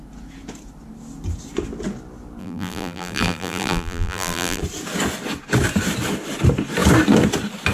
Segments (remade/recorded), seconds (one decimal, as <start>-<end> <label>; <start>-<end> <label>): 0.0-2.4 recorded; 2.4-4.6 remade; 4.6-7.7 recorded